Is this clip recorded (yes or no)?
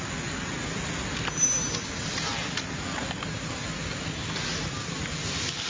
yes